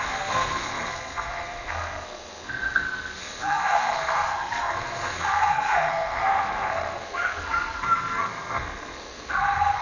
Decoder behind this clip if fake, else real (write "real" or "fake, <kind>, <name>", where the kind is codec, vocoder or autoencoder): fake, codec, SNAC